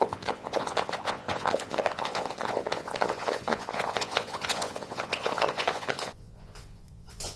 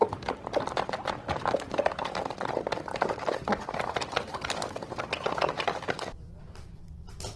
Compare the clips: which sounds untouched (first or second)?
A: second